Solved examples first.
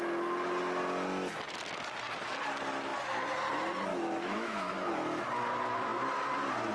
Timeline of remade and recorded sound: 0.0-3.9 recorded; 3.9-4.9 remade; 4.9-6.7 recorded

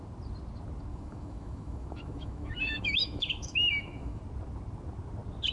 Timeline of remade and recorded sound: 0.0-0.9 recorded; 0.9-4.2 remade; 4.2-5.5 recorded

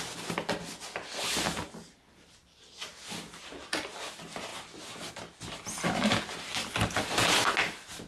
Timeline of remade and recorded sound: 0.0-8.1 recorded

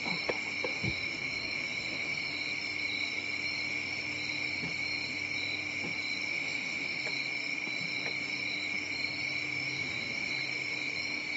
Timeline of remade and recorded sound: 0.0-0.7 recorded; 0.7-2.3 remade; 2.3-6.3 recorded; 6.3-7.0 remade; 7.0-9.8 recorded; 9.8-10.3 remade; 10.3-11.4 recorded

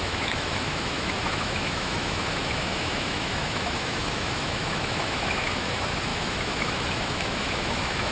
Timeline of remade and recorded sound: 0.0-8.1 remade

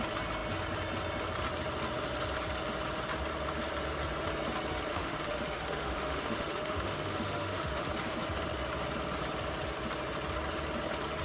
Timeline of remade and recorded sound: 0.0-4.9 recorded; 4.9-7.9 remade; 7.9-11.2 recorded